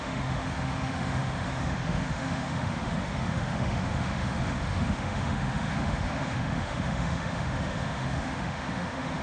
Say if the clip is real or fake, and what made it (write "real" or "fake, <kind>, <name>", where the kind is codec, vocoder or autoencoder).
fake, autoencoder, DAC-VAE